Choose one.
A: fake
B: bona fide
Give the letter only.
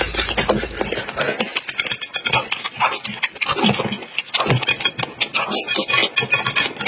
B